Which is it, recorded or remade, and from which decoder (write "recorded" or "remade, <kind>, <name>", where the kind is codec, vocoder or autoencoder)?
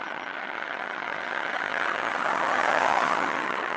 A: remade, vocoder, HiFi-GAN